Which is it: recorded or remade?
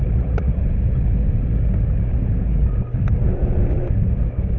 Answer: recorded